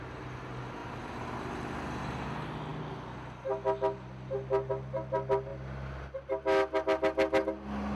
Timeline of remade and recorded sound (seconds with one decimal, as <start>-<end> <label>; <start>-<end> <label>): 0.0-0.8 recorded; 0.8-2.0 remade; 2.0-8.0 recorded